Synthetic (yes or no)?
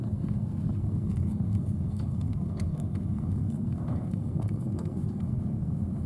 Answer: yes